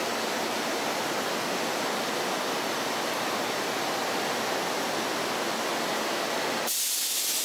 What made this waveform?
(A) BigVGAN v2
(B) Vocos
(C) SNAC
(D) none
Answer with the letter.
D